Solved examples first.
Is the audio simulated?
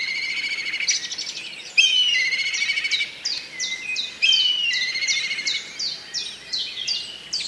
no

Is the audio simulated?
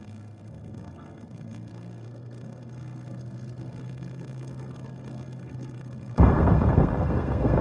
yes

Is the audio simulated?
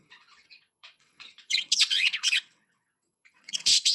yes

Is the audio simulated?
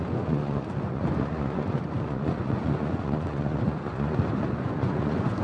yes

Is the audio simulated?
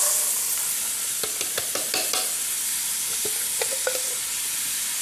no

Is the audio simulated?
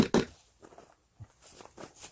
no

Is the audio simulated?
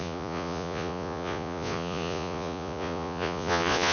yes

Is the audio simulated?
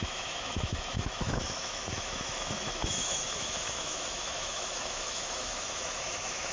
yes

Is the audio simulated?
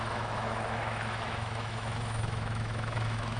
yes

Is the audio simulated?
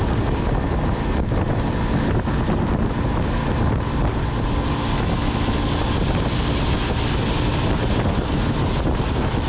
no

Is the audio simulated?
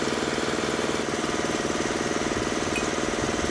no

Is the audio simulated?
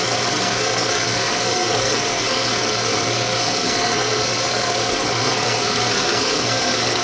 yes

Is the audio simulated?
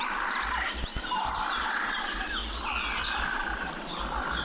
no